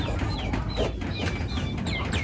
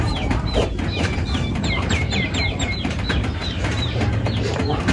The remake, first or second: second